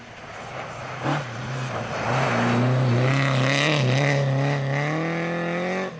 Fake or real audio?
real